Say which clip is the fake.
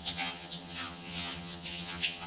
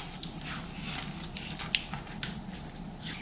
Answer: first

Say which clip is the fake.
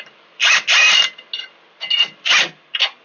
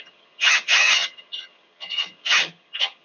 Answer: second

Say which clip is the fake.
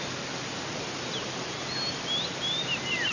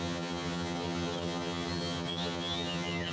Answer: second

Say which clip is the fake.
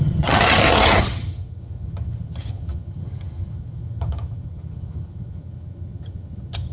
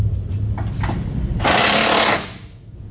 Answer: first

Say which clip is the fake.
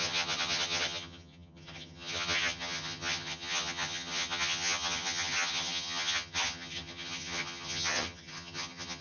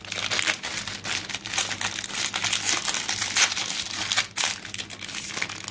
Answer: first